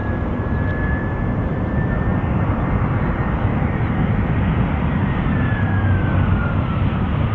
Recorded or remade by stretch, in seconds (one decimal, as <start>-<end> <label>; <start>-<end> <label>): 0.0-0.7 recorded; 0.7-7.3 remade